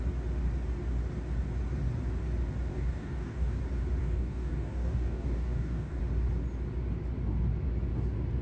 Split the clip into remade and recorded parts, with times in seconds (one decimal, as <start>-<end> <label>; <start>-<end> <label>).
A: 0.0-2.7 recorded; 2.7-3.6 remade; 3.6-4.0 recorded; 4.0-6.0 remade; 6.0-8.4 recorded